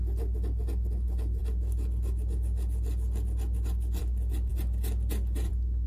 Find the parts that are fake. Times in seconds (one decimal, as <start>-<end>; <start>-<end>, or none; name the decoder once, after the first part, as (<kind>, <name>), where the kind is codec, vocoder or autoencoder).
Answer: none